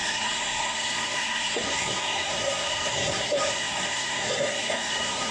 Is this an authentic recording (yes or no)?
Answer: no